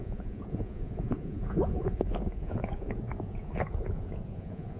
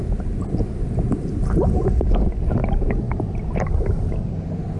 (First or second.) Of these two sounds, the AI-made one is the first